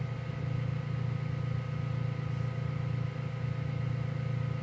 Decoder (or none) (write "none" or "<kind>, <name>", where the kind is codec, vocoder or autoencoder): none